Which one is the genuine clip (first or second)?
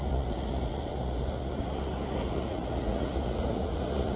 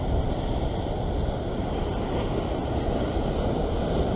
second